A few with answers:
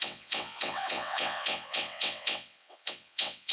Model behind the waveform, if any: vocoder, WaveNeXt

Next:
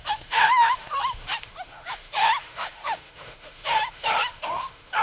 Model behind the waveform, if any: autoencoder, DAC-VAE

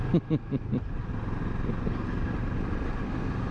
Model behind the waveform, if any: none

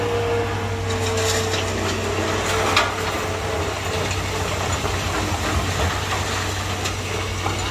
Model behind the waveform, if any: none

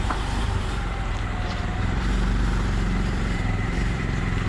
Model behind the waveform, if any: vocoder, BigVGAN v2